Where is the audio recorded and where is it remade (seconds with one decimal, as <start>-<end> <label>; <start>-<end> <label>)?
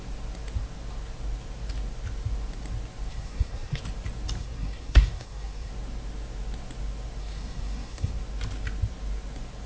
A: 0.0-3.1 recorded; 3.1-3.8 remade; 3.8-4.4 recorded; 4.4-5.7 remade; 5.7-7.2 recorded; 7.2-8.1 remade; 8.1-9.7 recorded